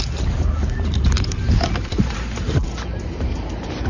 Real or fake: fake